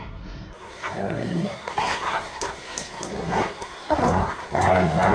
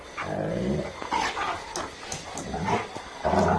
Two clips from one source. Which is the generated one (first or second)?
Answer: first